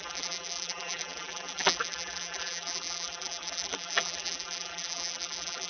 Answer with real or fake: fake